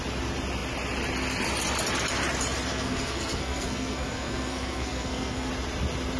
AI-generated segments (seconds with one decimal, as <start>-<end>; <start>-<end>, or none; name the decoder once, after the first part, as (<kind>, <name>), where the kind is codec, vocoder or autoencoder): 2.7-5.5 (codec, SNAC)